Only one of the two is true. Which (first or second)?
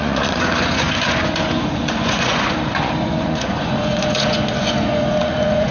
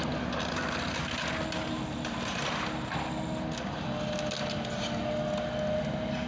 second